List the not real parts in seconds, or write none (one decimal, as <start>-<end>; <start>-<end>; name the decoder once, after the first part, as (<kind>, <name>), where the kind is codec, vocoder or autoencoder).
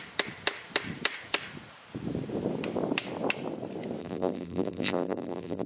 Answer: 4.0-5.7 (vocoder, BigVGAN v2)